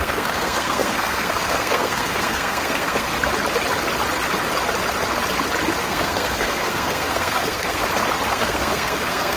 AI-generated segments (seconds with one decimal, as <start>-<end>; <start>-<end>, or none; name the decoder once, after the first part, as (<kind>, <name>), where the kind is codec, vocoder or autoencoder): 0.0-3.1 (codec, SNAC); 5.8-7.8; 8.3-9.4